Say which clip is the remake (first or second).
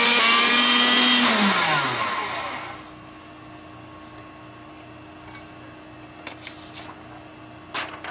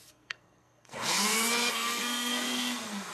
second